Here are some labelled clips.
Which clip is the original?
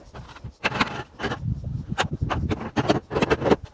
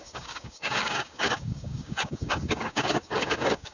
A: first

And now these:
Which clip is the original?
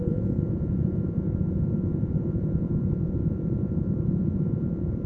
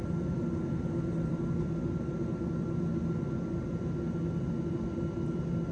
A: second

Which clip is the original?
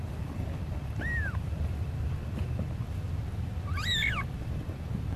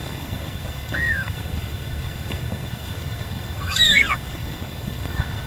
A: first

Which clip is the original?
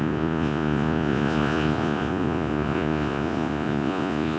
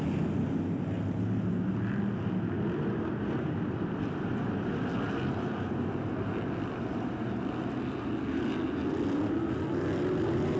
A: second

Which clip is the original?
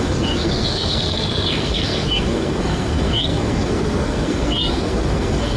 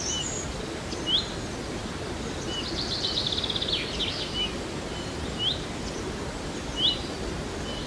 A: second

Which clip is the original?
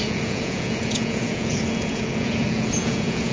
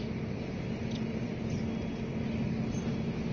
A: second